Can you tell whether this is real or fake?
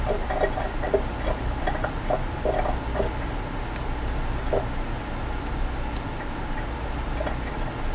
real